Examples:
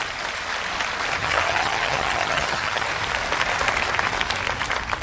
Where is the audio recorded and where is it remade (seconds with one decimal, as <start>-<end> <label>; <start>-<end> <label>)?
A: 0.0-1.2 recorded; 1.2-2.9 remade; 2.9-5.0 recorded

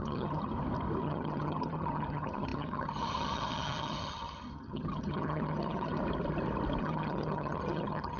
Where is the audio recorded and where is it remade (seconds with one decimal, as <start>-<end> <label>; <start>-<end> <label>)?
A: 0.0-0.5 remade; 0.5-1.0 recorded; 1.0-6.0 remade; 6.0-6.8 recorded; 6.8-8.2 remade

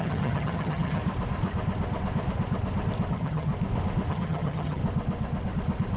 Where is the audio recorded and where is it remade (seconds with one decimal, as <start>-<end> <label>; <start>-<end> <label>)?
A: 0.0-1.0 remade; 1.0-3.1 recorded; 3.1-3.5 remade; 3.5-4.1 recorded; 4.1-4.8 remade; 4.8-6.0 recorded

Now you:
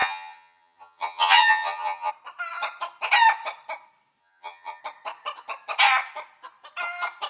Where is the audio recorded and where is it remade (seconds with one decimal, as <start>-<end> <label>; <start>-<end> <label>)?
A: 0.0-2.1 remade; 2.1-4.2 recorded; 4.2-4.8 remade; 4.8-7.3 recorded

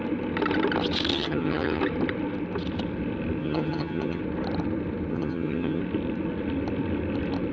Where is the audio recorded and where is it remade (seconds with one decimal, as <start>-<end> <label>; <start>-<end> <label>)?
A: 0.0-1.1 recorded; 1.1-1.8 remade; 1.8-3.4 recorded; 3.4-4.2 remade; 4.2-5.1 recorded; 5.1-5.8 remade; 5.8-7.5 recorded

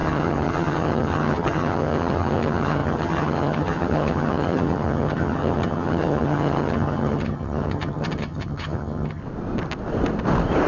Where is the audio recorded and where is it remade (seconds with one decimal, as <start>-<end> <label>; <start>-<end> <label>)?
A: 0.0-9.2 remade; 9.2-10.7 recorded

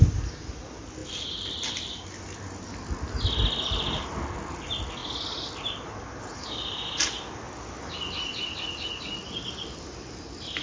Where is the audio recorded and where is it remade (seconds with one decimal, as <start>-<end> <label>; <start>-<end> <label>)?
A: 0.0-10.6 recorded

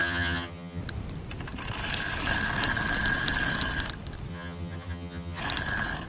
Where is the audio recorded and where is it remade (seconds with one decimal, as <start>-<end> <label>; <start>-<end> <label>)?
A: 0.0-0.8 remade; 0.8-4.3 recorded; 4.3-5.4 remade; 5.4-6.1 recorded